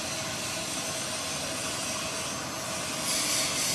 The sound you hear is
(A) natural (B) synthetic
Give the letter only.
A